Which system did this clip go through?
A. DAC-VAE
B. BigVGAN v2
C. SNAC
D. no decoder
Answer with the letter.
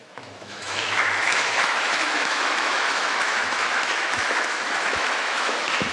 A